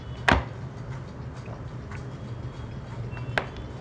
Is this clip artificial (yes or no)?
no